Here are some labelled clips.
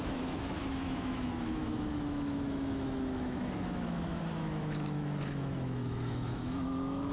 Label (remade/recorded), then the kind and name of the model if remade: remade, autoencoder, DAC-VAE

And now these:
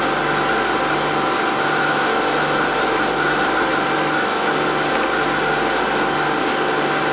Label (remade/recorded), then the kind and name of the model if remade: recorded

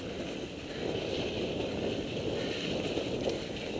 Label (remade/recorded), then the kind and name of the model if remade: recorded